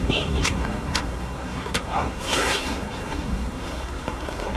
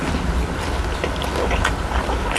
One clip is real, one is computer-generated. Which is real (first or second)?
second